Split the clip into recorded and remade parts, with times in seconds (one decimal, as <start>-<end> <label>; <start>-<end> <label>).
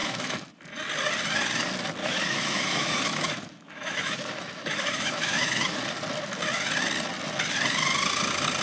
0.0-0.5 remade; 0.5-2.0 recorded; 2.0-5.8 remade; 5.8-8.6 recorded